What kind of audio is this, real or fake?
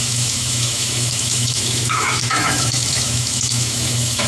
fake